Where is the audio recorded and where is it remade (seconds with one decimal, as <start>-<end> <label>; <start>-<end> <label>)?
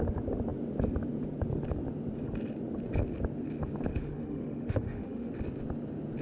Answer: 0.0-3.9 recorded; 3.9-5.3 remade; 5.3-6.2 recorded